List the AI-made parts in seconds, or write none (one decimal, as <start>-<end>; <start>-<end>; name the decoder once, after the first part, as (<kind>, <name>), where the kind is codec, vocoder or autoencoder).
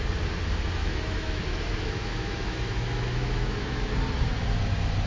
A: 0.8-3.9 (autoencoder, DAC-VAE)